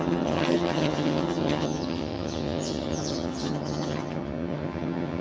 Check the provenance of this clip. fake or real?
fake